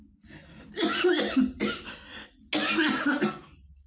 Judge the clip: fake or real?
real